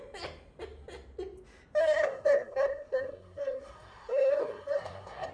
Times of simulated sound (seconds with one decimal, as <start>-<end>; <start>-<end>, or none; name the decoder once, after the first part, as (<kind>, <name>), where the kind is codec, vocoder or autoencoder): 1.8-5.3 (codec, SNAC)